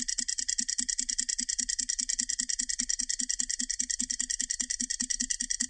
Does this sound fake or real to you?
real